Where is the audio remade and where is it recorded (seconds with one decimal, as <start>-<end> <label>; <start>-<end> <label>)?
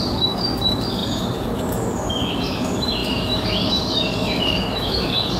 0.0-5.4 remade